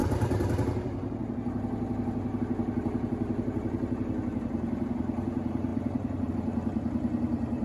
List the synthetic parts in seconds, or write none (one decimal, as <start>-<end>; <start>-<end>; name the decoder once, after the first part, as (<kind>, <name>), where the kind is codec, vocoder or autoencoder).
0.0-7.6 (vocoder, BigVGAN v2)